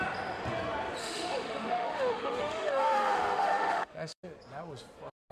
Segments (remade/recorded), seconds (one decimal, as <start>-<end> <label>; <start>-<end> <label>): 0.0-1.0 recorded; 1.0-4.2 remade; 4.2-5.3 recorded